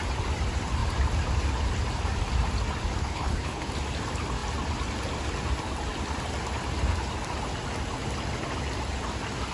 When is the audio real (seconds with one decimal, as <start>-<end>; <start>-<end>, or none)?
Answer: 0.0-3.0; 3.7-9.5